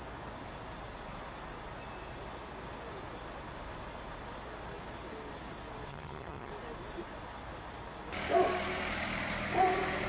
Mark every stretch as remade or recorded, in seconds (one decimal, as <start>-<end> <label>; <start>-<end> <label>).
0.0-5.9 recorded; 5.9-6.5 remade; 6.5-10.1 recorded